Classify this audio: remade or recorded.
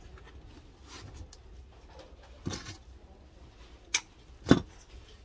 recorded